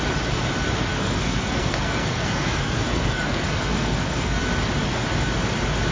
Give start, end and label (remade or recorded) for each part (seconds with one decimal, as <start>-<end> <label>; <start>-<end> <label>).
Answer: 0.0-0.9 recorded; 0.9-4.4 remade; 4.4-5.9 recorded